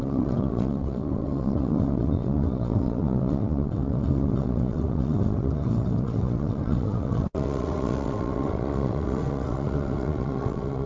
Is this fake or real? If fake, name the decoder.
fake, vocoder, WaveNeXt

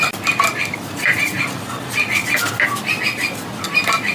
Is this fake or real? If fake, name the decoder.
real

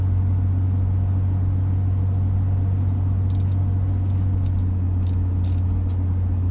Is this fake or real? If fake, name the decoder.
real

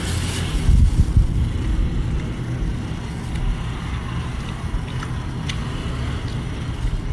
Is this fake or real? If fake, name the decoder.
real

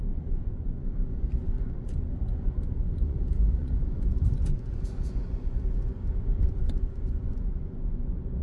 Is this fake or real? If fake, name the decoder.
fake, vocoder, Vocos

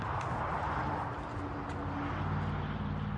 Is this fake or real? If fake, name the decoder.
real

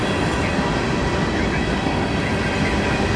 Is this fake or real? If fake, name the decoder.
real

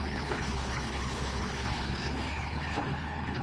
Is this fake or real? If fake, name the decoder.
fake, codec, HILCodec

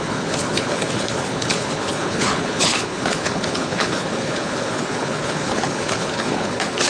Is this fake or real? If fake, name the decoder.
fake, codec, HILCodec